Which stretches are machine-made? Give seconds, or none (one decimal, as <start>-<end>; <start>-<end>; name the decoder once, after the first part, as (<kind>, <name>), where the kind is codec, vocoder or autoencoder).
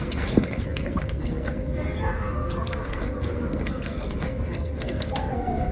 0.0-5.7 (codec, SNAC)